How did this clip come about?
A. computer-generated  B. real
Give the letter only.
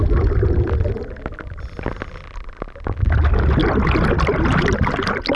B